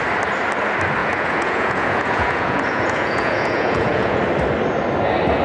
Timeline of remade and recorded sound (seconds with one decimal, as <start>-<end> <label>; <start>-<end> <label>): 0.0-1.0 recorded; 1.0-4.2 remade; 4.2-5.4 recorded